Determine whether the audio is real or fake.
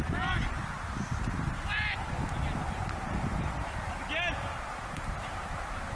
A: real